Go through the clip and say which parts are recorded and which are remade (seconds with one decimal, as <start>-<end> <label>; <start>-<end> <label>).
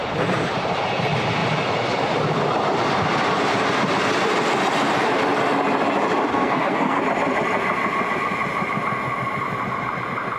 0.0-6.3 recorded; 6.3-7.0 remade; 7.0-10.4 recorded